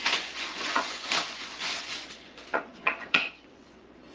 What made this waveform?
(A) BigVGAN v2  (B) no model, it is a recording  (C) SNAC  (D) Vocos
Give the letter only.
D